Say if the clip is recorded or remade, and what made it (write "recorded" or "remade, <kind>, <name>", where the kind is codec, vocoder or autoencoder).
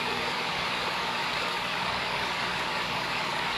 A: remade, codec, DAC